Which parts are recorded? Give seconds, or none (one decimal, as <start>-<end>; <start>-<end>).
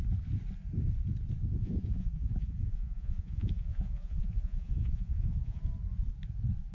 0.0-1.6; 5.6-6.7